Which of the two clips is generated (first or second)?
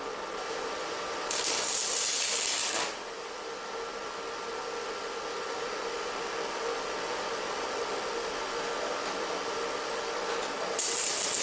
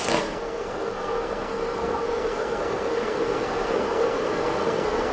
second